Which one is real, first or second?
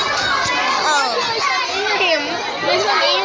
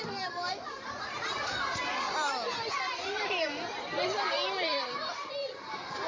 first